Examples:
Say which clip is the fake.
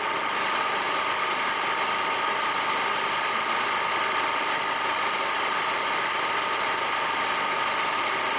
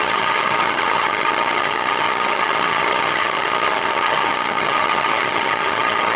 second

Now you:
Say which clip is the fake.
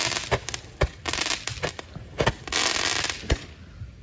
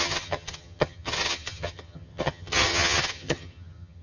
second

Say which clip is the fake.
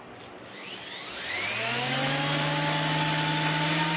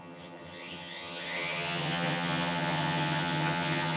second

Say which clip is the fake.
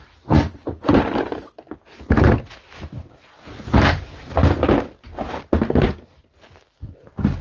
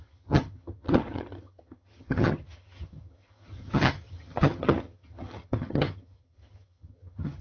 second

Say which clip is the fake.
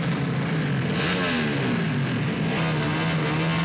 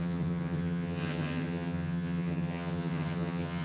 second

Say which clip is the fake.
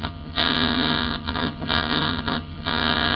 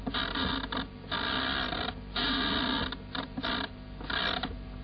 first